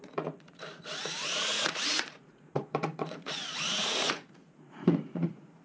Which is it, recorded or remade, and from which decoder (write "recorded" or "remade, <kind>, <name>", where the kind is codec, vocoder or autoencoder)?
remade, vocoder, Vocos